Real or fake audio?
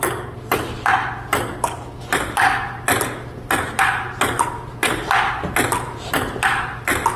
real